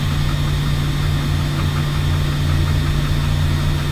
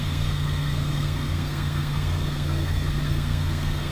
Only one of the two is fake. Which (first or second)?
second